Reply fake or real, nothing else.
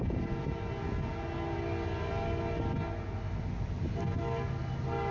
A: real